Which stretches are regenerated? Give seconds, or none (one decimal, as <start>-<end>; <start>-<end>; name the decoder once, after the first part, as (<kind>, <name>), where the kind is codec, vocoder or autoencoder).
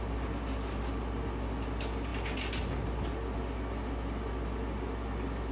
none